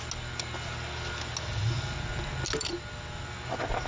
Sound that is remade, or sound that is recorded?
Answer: recorded